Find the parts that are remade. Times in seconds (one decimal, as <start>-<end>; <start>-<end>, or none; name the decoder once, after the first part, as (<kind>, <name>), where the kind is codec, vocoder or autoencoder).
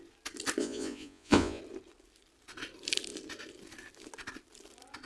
0.6-1.6 (vocoder, Vocos)